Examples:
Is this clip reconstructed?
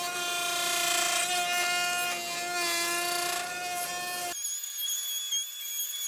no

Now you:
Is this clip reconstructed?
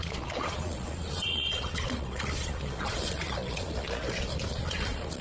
yes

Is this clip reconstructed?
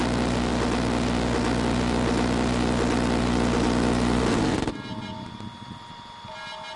no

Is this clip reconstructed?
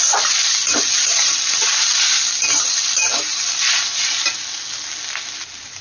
no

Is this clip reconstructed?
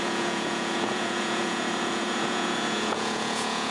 yes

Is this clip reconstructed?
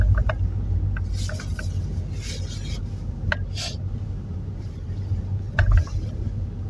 no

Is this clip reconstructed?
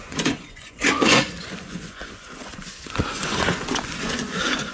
yes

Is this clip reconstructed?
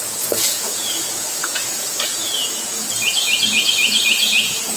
yes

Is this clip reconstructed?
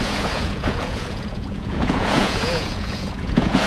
yes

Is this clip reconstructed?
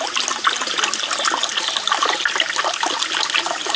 no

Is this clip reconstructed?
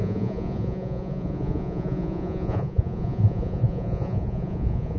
yes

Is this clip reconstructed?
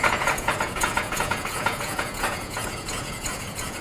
yes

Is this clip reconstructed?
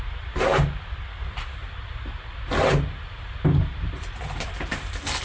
no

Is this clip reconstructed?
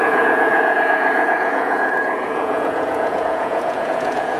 yes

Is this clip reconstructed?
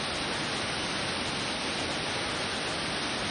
no